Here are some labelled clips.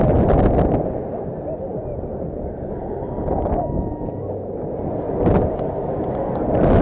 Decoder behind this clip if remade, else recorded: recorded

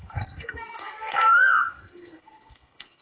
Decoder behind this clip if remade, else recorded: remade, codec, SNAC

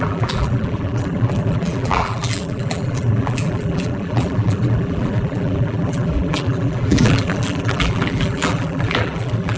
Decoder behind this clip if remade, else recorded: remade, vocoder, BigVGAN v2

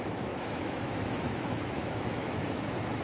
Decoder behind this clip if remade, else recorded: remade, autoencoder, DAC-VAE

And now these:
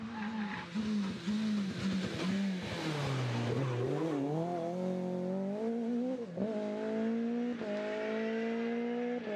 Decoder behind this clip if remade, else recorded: recorded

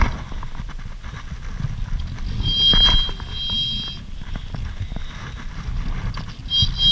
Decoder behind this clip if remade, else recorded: recorded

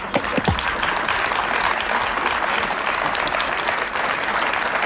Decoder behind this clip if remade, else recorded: recorded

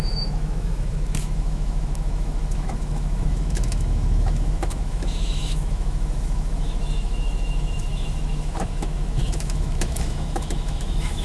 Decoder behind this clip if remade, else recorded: remade, autoencoder, DAC-VAE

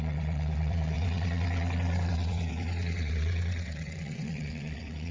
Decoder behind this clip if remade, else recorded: remade, vocoder, WaveNeXt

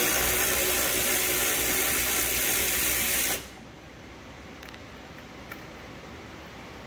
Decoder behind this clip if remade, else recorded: recorded